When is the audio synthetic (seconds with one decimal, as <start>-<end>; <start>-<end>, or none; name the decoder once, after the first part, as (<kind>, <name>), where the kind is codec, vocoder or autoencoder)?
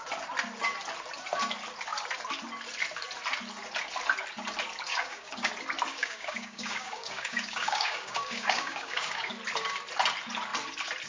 4.9-5.5 (codec, DAC); 5.9-9.3